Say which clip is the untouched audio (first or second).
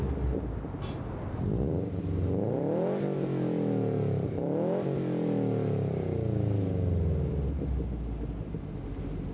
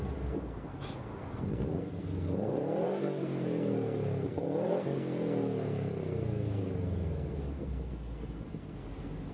first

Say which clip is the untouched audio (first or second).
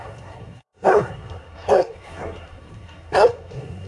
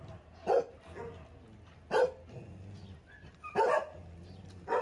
second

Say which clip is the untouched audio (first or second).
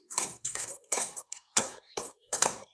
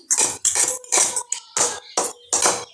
second